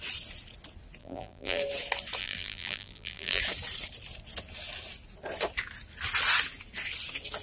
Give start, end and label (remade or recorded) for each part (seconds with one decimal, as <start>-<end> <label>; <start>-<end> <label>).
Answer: 0.0-1.0 recorded; 1.0-1.6 remade; 1.6-2.2 recorded; 2.2-3.4 remade; 3.4-7.4 recorded